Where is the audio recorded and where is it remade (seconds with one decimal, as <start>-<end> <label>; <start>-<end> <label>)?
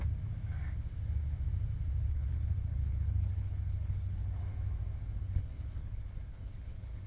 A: 0.0-2.1 recorded; 2.1-4.5 remade; 4.5-5.0 recorded; 5.0-7.1 remade